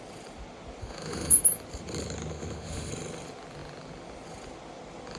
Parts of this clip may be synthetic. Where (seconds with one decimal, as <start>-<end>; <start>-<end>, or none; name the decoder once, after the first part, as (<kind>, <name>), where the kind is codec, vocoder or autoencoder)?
0.8-1.4 (autoencoder, DAC-VAE); 2.3-2.9